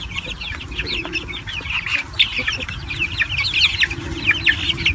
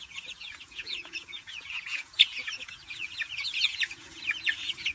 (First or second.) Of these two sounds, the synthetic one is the second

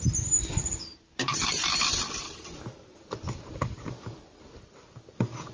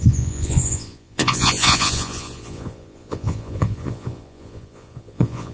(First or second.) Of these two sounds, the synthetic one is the second